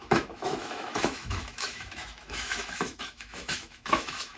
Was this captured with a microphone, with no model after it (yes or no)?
no